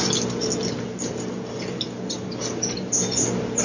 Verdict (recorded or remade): recorded